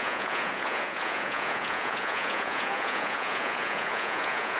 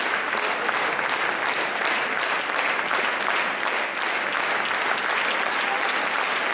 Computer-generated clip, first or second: first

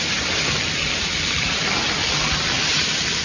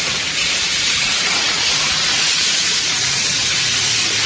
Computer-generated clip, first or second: second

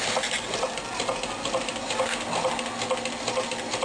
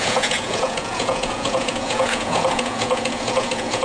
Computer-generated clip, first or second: second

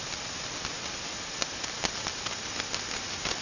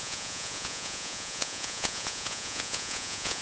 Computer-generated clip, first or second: second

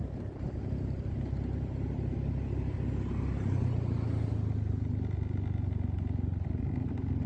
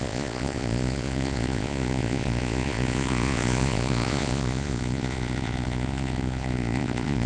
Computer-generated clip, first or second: second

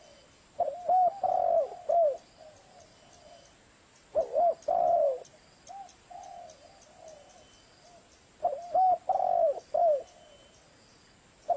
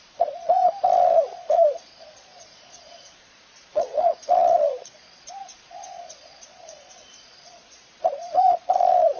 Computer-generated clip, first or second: second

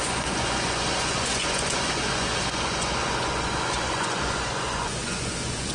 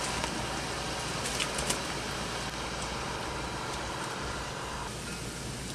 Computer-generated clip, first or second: first